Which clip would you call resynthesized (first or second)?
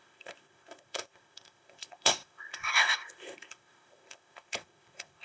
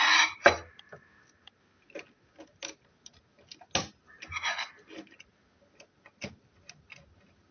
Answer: first